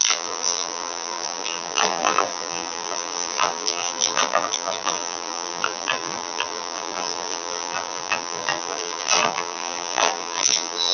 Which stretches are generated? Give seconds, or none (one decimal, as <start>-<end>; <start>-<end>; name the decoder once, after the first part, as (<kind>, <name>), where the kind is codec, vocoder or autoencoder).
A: 0.0-10.9 (vocoder, BigVGAN v2)